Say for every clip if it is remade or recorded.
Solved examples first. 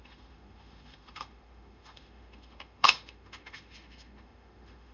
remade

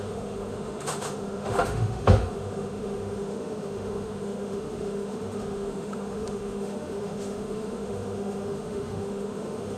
remade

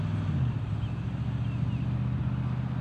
recorded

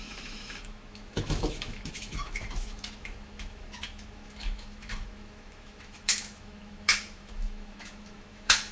remade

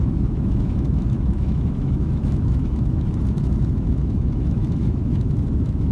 remade